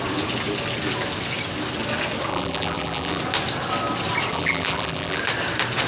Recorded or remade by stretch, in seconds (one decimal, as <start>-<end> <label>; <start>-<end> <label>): 0.0-2.3 recorded; 2.3-3.2 remade; 3.2-4.3 recorded; 4.3-5.2 remade; 5.2-5.9 recorded